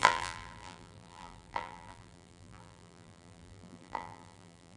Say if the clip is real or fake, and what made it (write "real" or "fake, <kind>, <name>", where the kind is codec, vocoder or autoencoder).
fake, vocoder, BigVGAN v2